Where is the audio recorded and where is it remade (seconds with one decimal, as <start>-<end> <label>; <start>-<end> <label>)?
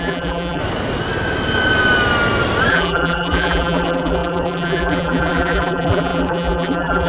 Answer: 0.0-0.6 remade; 0.6-2.7 recorded; 2.7-7.1 remade